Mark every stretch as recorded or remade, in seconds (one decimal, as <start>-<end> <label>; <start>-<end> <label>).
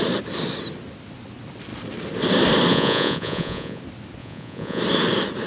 0.0-2.7 recorded; 2.7-3.8 remade; 3.8-4.2 recorded; 4.2-4.8 remade; 4.8-5.5 recorded